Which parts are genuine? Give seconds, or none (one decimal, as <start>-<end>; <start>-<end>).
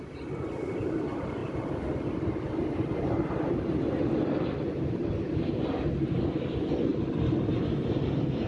0.0-1.4; 5.1-6.9; 7.7-8.5